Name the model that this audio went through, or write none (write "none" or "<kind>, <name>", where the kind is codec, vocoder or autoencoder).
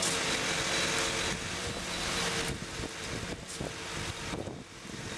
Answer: none